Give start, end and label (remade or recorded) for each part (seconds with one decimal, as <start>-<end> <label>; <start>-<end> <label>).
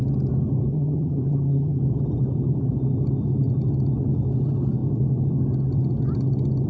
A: 0.0-0.7 recorded; 0.7-1.8 remade; 1.8-6.7 recorded